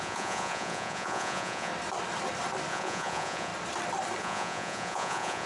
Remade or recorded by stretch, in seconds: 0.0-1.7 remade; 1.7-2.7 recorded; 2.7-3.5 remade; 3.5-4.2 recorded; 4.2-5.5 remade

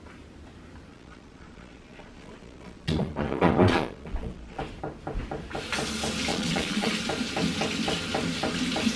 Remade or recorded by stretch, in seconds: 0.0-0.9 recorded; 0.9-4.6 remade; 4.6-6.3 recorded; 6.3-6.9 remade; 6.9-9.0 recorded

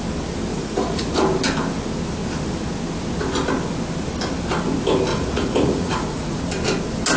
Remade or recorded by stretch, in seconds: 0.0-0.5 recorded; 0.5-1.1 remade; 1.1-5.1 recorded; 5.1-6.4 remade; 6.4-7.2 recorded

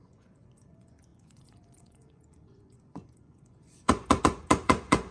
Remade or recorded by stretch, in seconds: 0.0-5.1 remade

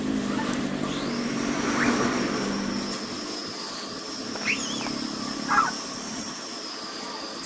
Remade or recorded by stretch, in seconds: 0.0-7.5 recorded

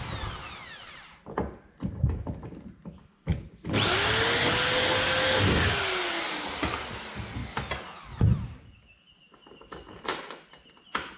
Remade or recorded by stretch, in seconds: 0.0-11.2 recorded